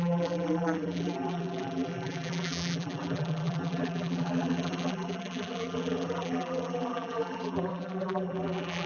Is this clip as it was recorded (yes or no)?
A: no